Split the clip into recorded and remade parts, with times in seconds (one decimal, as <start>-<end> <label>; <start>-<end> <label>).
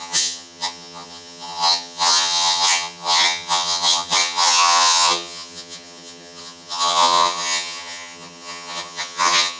0.0-9.6 remade